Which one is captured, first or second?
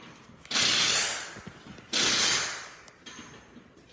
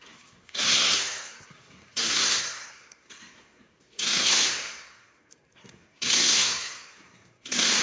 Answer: first